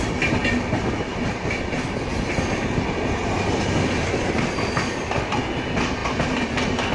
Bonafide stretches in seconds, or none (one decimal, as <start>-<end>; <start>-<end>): 0.0-6.9